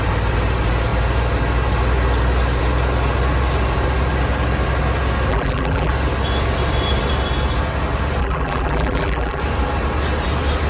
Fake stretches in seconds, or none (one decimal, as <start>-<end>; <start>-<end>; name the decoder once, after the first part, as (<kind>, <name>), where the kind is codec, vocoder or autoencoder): 5.3-5.9 (vocoder, BigVGAN v2); 8.2-9.4